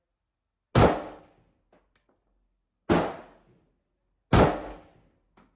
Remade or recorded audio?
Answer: recorded